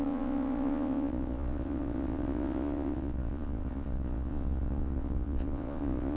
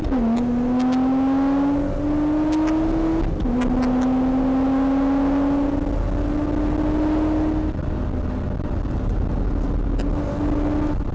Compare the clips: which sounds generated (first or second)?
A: first